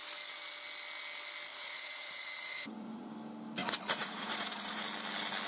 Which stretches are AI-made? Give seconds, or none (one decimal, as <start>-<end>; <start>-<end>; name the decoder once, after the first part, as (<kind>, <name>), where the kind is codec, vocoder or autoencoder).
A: 1.5-3.1 (vocoder, Vocos); 3.6-4.8